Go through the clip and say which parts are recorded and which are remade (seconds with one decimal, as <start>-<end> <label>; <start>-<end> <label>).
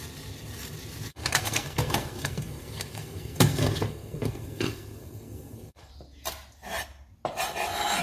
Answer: 0.0-1.1 recorded; 1.1-5.9 remade; 5.9-8.0 recorded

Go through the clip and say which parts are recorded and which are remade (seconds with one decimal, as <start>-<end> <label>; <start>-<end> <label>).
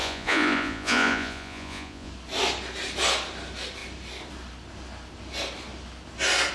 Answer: 0.0-2.1 remade; 2.1-6.5 recorded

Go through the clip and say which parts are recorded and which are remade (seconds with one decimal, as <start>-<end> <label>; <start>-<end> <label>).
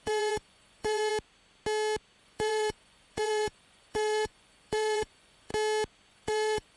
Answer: 0.0-1.1 remade; 1.1-2.2 recorded; 2.2-5.5 remade; 5.5-6.1 recorded; 6.1-6.8 remade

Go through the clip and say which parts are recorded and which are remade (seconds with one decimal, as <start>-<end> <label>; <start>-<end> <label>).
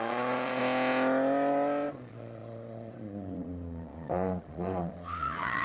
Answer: 0.0-0.6 remade; 0.6-1.9 recorded; 1.9-5.6 remade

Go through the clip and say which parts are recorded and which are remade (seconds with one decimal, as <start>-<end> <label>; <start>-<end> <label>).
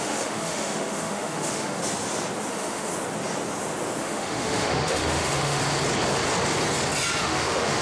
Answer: 0.0-1.8 remade; 1.8-2.5 recorded; 2.5-2.9 remade; 2.9-4.0 recorded; 4.0-5.6 remade; 5.6-7.2 recorded; 7.2-7.8 remade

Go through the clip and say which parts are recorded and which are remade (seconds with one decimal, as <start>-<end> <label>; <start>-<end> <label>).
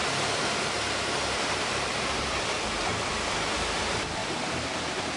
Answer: 0.0-3.1 remade; 3.1-4.2 recorded; 4.2-5.2 remade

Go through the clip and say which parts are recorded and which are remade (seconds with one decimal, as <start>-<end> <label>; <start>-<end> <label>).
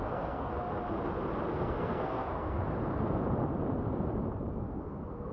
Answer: 0.0-0.5 remade; 0.5-1.5 recorded; 1.5-2.6 remade; 2.6-4.7 recorded; 4.7-5.3 remade